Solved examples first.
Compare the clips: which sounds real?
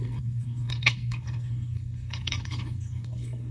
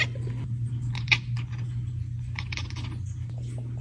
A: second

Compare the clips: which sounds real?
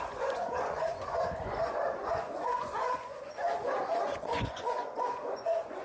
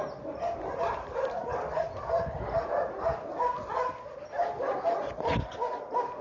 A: second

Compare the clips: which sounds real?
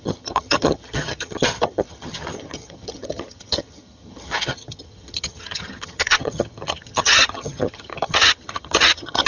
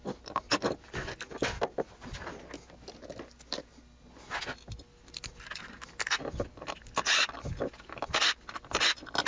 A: second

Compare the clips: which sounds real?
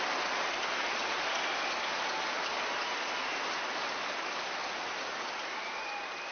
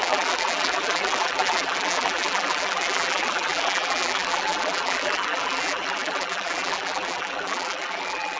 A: first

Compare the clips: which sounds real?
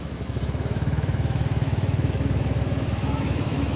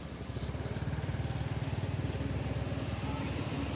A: second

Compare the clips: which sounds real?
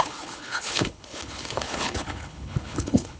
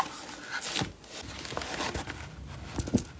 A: second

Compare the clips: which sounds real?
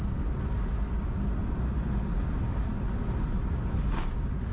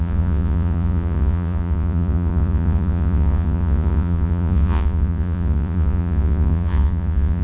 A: first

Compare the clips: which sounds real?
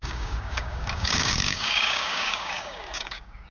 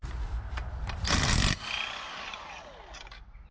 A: second